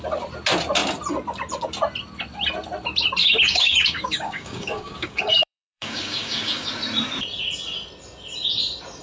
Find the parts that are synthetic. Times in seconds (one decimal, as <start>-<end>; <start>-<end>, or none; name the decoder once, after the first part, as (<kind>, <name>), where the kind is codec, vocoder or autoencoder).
3.2-6.7 (codec, DAC)